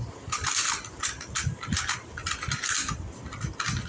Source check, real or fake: real